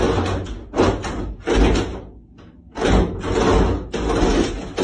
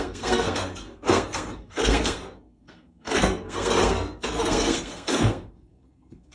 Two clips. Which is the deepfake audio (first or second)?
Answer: second